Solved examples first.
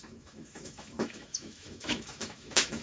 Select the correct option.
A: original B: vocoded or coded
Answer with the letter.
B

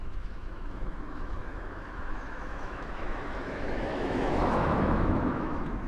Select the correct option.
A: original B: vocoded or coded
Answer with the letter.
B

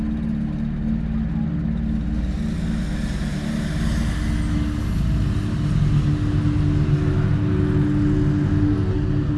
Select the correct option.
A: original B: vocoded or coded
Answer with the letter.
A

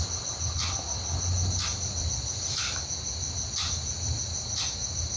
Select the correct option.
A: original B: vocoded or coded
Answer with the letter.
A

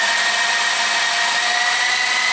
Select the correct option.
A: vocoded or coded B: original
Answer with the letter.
B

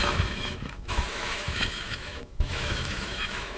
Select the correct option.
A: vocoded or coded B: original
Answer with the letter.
A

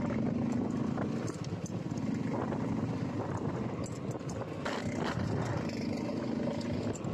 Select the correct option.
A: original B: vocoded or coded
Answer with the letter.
A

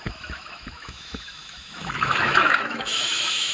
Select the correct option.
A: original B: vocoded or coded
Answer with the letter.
B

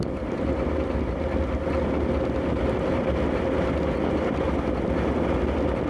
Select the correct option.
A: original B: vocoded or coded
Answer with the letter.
A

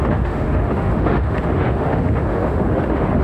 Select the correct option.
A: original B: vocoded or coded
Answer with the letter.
B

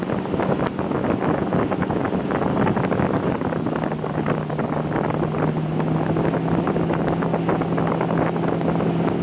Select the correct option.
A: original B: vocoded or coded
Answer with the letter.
A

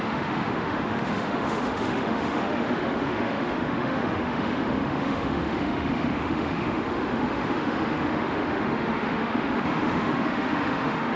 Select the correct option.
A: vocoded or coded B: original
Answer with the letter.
A